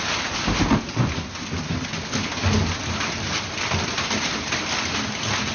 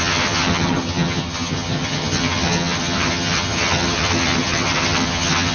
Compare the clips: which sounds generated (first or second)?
second